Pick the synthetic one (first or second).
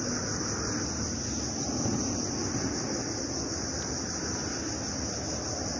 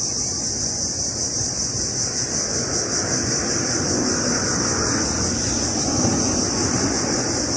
second